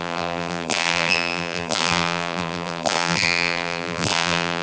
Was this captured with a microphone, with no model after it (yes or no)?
no